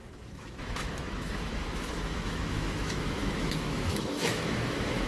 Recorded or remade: remade